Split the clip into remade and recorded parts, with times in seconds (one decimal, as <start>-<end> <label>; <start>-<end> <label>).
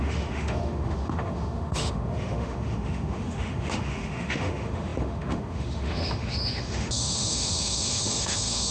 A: 0.0-8.7 remade